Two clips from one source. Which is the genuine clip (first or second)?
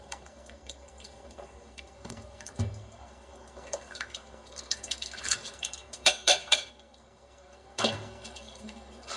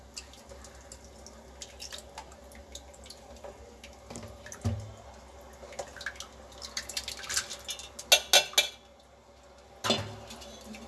second